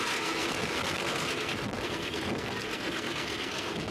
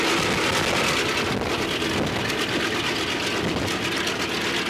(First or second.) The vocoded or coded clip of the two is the first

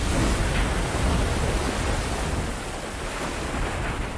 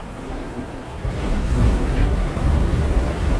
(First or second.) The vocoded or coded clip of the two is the second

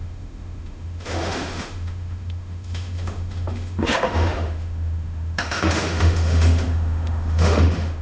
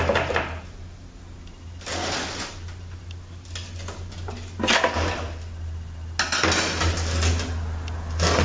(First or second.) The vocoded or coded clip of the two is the first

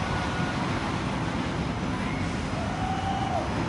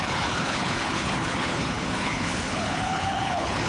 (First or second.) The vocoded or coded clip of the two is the second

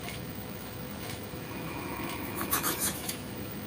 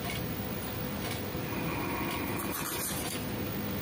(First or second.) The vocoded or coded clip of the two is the first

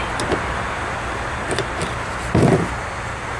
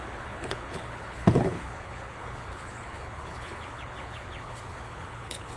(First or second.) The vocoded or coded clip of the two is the second